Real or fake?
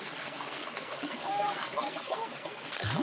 fake